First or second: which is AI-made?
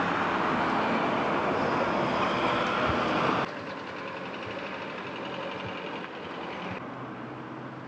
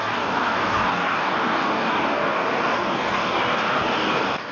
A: second